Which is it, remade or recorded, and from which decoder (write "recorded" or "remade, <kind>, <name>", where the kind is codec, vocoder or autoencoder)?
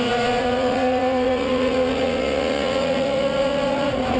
remade, vocoder, Vocos